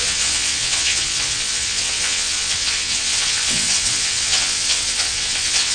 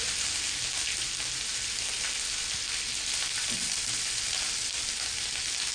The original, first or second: second